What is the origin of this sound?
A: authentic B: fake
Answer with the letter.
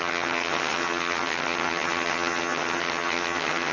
B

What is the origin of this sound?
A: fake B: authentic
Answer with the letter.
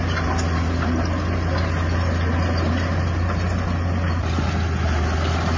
B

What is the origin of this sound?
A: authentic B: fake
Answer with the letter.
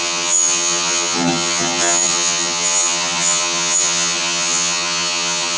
B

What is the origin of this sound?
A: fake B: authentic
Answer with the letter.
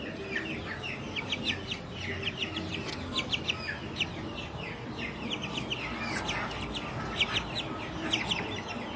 B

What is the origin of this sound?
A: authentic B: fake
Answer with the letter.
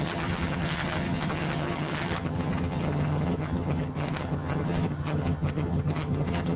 B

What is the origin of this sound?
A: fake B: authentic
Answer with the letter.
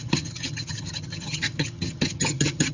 A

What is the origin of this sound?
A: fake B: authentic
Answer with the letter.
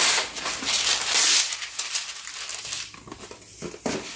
B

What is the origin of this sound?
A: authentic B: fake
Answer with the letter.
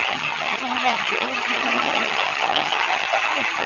B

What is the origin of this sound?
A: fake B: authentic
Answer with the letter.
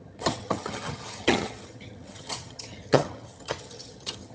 A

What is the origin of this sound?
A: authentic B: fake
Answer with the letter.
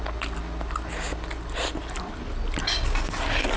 A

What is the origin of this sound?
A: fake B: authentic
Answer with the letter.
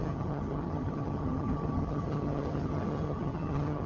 A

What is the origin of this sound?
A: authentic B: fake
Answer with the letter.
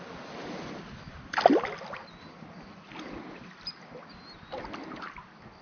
A